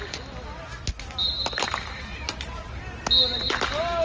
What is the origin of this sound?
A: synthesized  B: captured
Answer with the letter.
B